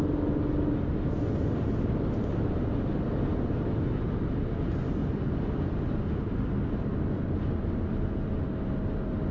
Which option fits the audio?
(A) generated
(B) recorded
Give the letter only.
B